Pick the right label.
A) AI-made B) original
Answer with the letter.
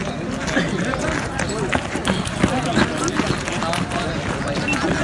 B